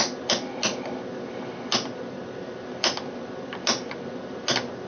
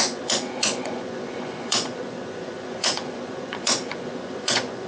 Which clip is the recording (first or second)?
first